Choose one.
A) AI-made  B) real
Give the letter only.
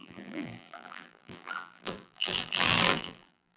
A